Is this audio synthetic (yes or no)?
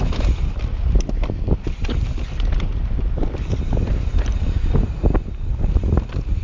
no